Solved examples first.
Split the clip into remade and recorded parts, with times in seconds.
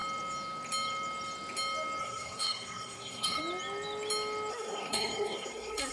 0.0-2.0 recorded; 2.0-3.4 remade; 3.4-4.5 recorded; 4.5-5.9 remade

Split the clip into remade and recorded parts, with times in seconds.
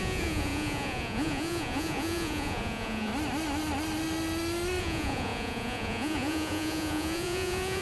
0.0-3.1 remade; 3.1-4.8 recorded; 4.8-7.8 remade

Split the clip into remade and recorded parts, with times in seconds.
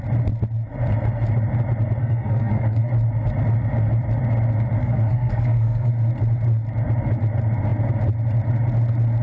0.0-2.0 recorded; 2.0-2.9 remade; 2.9-4.8 recorded; 4.8-5.9 remade; 5.9-9.2 recorded